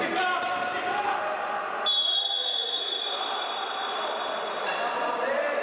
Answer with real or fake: real